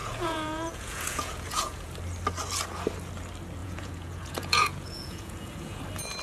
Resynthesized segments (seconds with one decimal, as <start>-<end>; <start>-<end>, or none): 0.0-1.9; 3.6-5.8